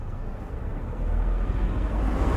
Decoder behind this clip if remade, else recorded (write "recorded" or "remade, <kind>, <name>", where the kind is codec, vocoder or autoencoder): remade, codec, SNAC